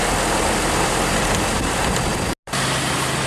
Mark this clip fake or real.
real